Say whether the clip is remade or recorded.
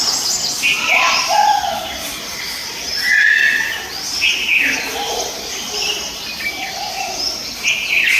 recorded